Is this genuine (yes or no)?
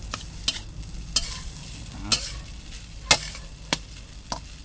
yes